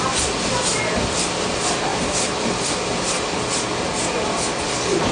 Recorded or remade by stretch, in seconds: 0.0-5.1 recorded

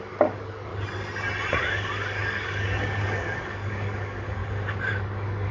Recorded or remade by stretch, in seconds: 0.0-0.7 remade; 0.7-1.6 recorded; 1.6-4.4 remade; 4.4-4.9 recorded; 4.9-5.5 remade

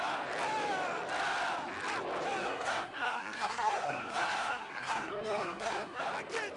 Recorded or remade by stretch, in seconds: 0.0-2.4 recorded; 2.4-6.0 remade; 6.0-6.6 recorded

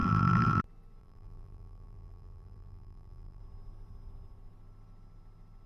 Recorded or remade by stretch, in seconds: 0.0-0.6 remade; 0.6-1.0 recorded; 1.0-3.4 remade; 3.4-5.7 recorded

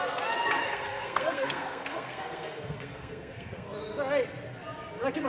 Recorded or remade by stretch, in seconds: 0.0-0.6 recorded; 0.6-3.8 remade; 3.8-5.3 recorded

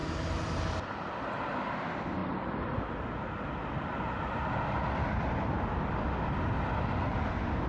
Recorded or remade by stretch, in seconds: 0.0-7.7 recorded